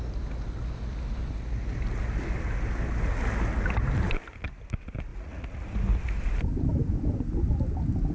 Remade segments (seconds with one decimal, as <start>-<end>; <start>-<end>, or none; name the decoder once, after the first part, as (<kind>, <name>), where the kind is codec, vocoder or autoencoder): 5.1-5.7 (vocoder, Vocos)